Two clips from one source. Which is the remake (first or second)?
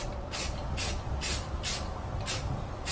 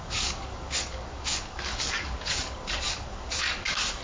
second